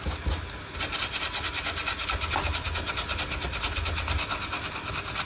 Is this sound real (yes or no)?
yes